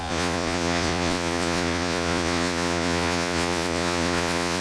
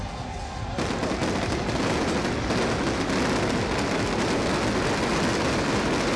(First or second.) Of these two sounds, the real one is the second